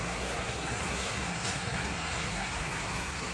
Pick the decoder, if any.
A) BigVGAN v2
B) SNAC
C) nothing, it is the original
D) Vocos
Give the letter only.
B